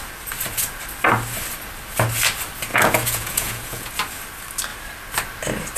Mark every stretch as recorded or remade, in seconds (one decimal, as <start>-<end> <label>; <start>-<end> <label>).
0.0-2.7 recorded; 2.7-3.9 remade; 3.9-5.8 recorded